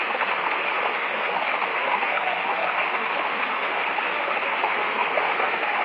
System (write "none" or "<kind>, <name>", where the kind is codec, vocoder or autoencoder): autoencoder, DAC-VAE